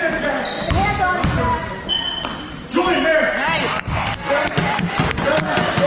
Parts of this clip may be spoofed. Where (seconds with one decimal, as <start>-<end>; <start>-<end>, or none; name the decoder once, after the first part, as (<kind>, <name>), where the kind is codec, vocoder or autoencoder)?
3.7-4.5 (codec, SNAC)